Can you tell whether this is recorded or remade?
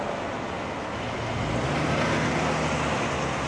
recorded